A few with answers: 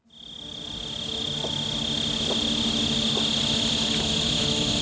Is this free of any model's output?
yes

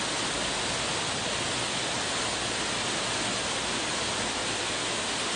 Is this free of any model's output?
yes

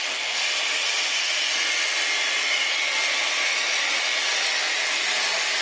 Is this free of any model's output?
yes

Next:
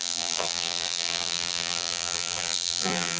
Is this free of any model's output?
no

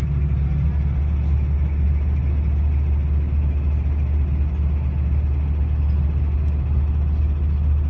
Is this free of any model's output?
yes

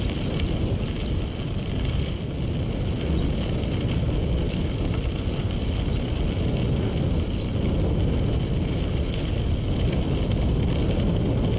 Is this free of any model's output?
yes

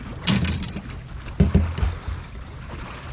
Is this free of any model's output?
yes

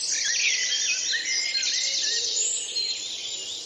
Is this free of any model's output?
yes